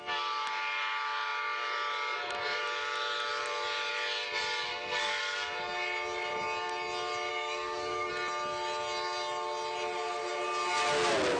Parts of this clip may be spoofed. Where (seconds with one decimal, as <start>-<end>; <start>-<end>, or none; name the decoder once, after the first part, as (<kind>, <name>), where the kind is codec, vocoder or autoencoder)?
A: 4.7-5.2 (codec, SNAC); 7.3-8.1